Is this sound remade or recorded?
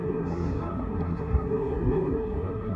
remade